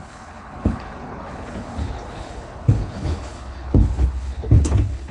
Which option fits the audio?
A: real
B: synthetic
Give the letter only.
B